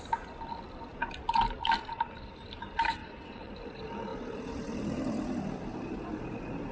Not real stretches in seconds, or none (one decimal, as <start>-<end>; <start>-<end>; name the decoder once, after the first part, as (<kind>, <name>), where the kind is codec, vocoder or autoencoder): 3.0-3.5 (vocoder, WaveNeXt)